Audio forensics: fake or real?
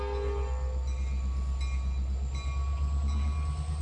real